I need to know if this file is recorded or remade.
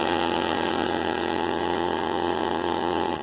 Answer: remade